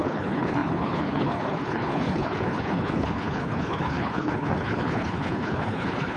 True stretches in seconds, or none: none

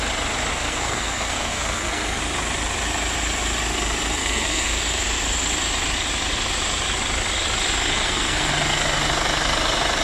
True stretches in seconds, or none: 0.0-0.5; 2.2-4.2; 4.8-7.9; 8.5-10.0

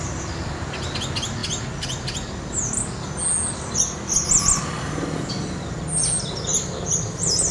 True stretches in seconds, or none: 0.0-7.5